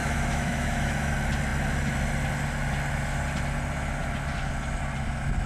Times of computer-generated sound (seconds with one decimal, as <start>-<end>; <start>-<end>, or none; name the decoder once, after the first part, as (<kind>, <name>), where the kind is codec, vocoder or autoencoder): 0.0-1.1 (autoencoder, DAC-VAE)